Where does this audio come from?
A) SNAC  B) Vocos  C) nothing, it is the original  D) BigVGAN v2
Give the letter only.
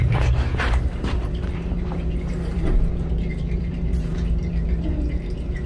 D